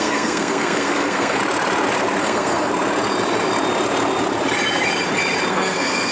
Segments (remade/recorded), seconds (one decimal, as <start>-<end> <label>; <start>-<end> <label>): 0.0-1.4 remade; 1.4-2.2 recorded; 2.2-2.7 remade; 2.7-5.5 recorded; 5.5-6.1 remade